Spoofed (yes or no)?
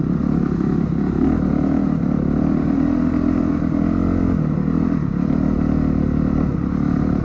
no